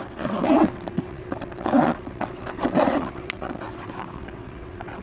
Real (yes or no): no